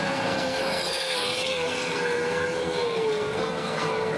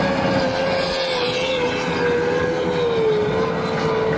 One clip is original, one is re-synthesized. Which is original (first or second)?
second